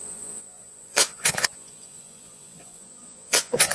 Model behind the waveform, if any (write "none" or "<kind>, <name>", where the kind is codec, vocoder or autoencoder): vocoder, Vocos